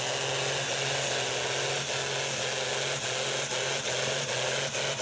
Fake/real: real